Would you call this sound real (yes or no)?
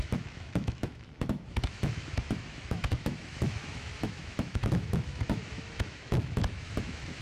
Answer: no